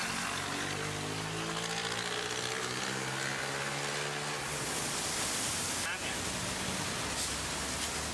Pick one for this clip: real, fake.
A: real